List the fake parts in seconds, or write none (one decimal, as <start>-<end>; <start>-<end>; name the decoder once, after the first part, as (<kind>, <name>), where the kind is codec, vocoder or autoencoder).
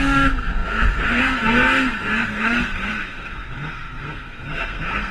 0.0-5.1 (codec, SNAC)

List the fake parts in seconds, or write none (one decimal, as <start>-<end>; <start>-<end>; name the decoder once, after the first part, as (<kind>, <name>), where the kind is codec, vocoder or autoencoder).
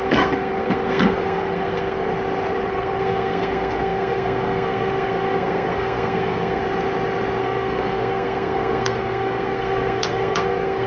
0.0-2.1 (codec, SNAC); 2.7-6.6; 7.4-10.9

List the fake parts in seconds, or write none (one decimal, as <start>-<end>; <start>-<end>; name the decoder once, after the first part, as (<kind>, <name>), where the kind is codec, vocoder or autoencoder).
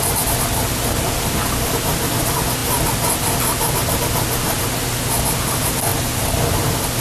none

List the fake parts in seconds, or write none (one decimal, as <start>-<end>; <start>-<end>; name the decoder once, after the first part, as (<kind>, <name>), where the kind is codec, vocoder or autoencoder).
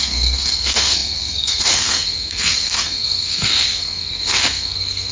0.0-5.1 (codec, SNAC)